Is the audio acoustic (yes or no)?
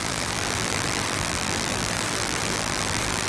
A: no